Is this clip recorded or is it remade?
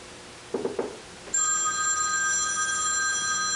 recorded